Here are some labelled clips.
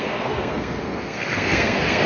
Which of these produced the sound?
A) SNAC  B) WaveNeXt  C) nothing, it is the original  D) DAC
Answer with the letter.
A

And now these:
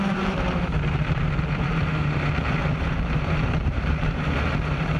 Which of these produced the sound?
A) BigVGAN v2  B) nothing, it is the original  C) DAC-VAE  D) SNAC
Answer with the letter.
A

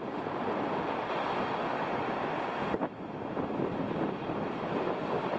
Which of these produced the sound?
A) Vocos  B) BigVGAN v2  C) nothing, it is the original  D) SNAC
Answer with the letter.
C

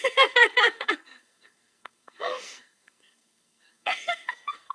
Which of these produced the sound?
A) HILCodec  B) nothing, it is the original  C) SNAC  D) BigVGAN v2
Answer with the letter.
C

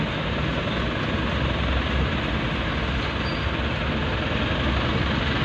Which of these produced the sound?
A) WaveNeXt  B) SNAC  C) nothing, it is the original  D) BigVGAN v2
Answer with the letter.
C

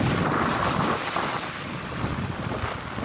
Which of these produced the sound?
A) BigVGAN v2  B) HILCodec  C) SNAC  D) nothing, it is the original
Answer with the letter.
D